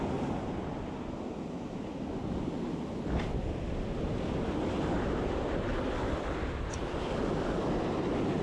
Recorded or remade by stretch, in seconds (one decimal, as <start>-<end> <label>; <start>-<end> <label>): 0.0-8.4 recorded